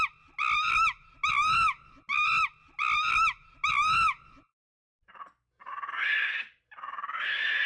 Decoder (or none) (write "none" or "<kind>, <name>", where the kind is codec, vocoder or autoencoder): none